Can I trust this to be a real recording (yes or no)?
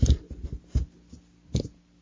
yes